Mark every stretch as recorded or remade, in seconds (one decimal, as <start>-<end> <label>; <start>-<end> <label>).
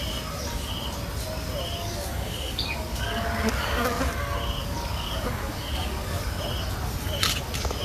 0.0-1.8 recorded; 1.8-4.1 remade; 4.1-4.6 recorded; 4.6-6.4 remade; 6.4-7.8 recorded